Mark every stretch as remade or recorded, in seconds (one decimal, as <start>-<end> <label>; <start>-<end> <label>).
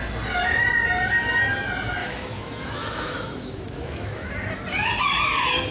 0.0-2.0 recorded; 2.0-4.3 remade; 4.3-5.7 recorded